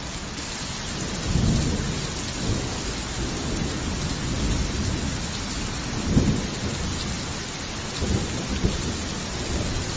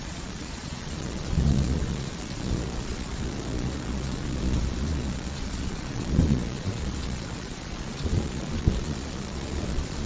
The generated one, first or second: second